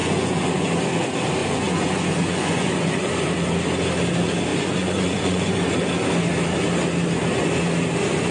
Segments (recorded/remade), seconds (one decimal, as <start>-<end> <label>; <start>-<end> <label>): 0.0-0.7 remade; 0.7-1.4 recorded; 1.4-3.1 remade; 3.1-4.5 recorded; 4.5-5.6 remade; 5.6-8.3 recorded